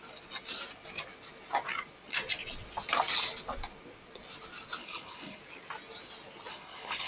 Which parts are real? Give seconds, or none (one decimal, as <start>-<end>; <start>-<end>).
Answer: 0.0-4.8; 5.4-6.5